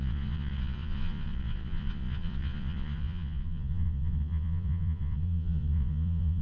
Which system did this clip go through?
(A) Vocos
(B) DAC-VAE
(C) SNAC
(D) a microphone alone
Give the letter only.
A